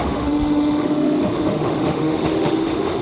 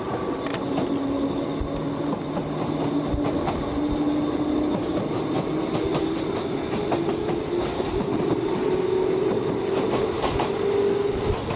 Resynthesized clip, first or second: first